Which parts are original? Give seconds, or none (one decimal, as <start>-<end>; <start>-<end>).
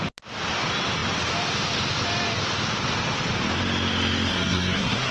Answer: 0.0-4.3